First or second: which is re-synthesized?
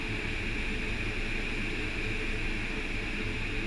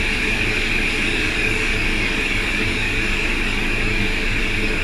second